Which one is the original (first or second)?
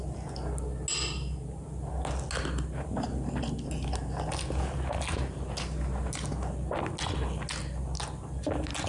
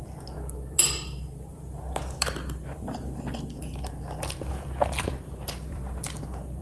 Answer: first